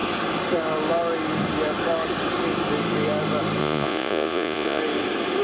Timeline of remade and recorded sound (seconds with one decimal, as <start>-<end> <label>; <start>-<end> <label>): 0.0-3.6 recorded; 3.6-4.8 remade; 4.8-5.4 recorded